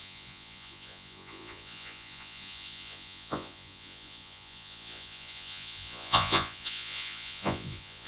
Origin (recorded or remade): remade